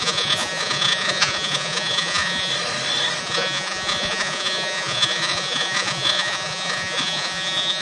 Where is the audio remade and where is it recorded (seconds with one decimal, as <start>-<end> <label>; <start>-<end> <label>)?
0.0-2.5 remade; 2.5-3.2 recorded; 3.2-7.8 remade